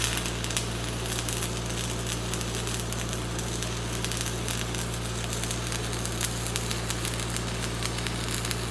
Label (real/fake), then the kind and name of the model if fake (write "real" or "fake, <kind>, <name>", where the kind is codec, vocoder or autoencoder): real